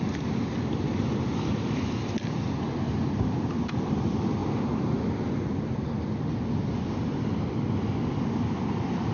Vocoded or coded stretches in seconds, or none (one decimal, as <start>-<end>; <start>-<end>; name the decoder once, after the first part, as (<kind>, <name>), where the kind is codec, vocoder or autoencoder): none